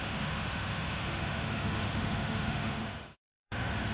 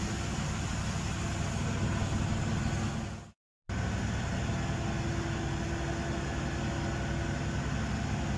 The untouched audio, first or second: second